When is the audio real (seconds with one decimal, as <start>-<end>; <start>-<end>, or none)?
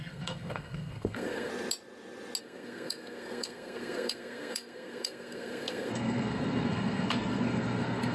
1.5-2.4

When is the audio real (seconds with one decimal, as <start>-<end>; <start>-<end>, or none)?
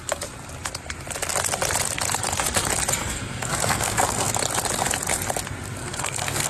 0.0-3.0; 4.3-5.8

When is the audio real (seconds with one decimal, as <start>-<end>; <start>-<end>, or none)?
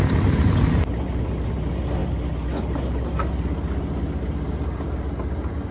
0.0-5.7